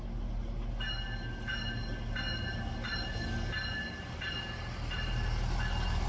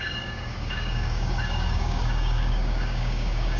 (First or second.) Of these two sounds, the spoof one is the second